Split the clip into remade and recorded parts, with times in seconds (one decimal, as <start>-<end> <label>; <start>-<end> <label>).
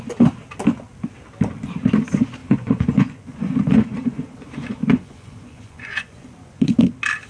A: 0.0-2.4 recorded; 2.4-6.8 remade; 6.8-7.3 recorded